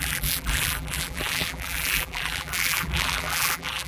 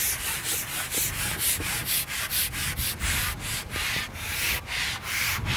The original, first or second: second